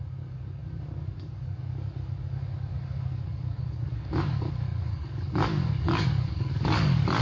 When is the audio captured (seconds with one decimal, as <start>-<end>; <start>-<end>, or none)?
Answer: none